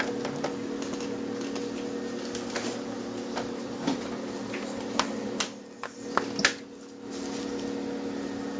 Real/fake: real